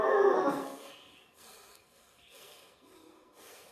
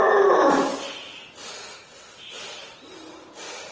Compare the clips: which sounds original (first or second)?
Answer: second